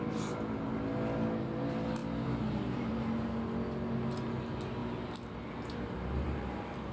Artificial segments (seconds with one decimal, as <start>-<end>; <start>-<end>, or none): none